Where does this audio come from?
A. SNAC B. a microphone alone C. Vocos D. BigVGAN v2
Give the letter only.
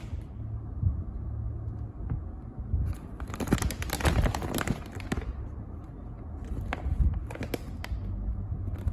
B